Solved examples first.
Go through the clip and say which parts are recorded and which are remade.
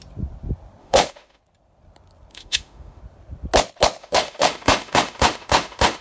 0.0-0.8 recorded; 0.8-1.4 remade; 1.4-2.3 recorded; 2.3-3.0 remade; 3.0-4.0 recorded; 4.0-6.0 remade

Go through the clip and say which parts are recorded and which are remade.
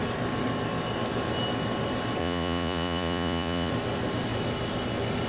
0.0-2.2 recorded; 2.2-3.7 remade; 3.7-5.3 recorded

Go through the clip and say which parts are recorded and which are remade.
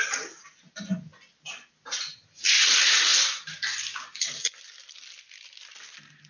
0.0-6.3 recorded